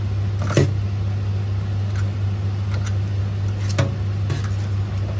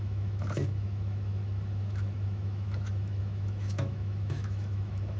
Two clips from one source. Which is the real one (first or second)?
first